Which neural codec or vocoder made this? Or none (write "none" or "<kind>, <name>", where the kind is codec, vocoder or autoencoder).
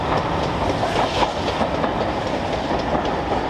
none